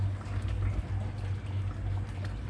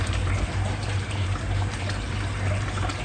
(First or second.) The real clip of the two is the first